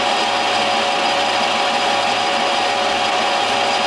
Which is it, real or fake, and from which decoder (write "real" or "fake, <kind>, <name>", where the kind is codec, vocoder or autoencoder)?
real